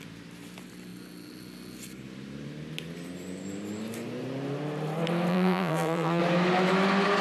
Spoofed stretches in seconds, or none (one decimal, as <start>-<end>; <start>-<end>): 5.3-6.2

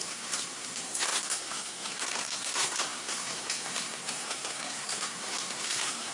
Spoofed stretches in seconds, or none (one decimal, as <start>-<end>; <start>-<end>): 0.0-6.1